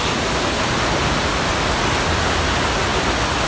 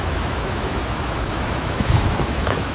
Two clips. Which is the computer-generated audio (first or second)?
second